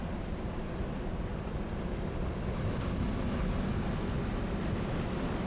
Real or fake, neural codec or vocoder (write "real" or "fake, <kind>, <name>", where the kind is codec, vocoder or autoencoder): real